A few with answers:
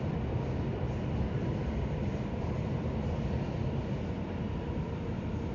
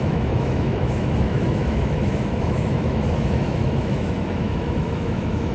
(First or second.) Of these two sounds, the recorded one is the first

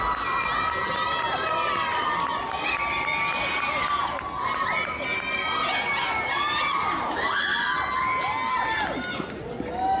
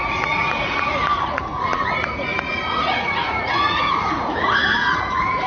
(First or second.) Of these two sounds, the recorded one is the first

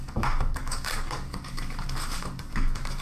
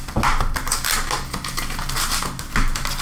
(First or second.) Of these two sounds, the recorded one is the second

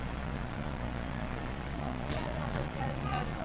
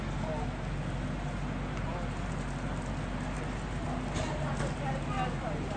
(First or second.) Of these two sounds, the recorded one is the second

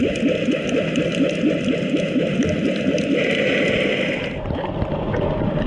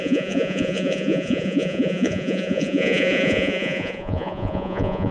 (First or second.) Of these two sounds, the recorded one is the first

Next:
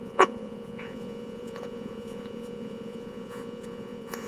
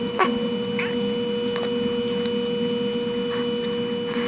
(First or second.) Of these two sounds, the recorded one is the second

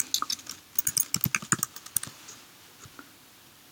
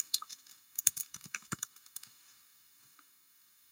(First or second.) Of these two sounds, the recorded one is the first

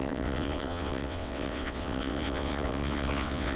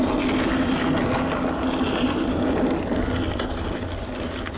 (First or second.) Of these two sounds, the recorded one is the second